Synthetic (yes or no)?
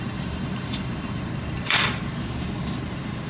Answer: yes